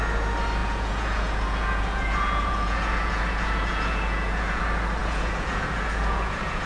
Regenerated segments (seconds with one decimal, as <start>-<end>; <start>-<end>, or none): 0.6-4.6; 5.0-6.7